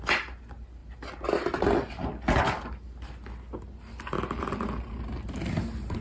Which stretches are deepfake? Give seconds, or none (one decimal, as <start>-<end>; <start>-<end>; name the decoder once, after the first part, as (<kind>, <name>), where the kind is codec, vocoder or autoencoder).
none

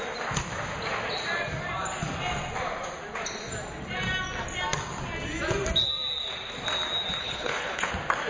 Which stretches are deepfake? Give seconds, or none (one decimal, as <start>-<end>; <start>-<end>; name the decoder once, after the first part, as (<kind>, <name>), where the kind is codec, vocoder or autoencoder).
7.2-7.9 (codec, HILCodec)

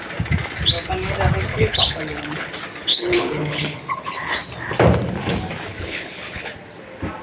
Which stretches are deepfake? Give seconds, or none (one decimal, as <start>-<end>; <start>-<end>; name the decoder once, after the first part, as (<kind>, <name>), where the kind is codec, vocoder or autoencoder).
1.5-2.5 (codec, HILCodec); 2.9-4.3; 5.7-6.5

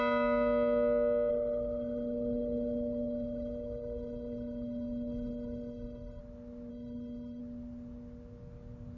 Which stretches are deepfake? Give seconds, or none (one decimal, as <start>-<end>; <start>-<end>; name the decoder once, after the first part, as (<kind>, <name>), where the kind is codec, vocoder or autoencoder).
1.3-6.2 (codec, HILCodec); 6.7-7.4